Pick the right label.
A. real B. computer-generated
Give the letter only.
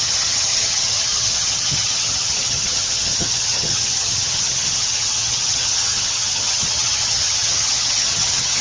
B